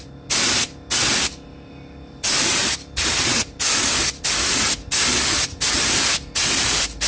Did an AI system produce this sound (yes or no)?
no